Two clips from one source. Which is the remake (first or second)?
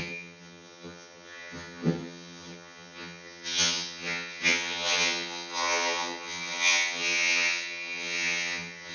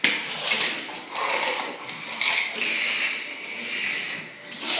first